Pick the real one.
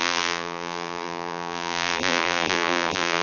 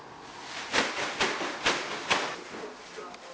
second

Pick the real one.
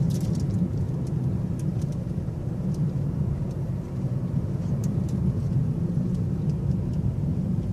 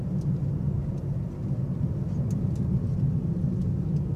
second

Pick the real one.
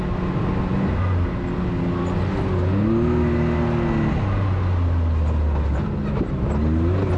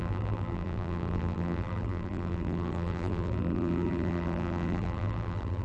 first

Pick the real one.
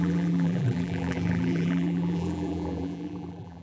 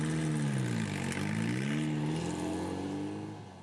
second